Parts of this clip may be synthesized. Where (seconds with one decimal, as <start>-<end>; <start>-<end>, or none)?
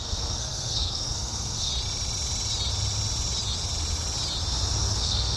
0.0-1.7; 4.9-5.4